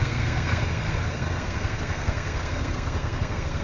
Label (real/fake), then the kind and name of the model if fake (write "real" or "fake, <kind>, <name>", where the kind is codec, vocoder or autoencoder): fake, codec, SNAC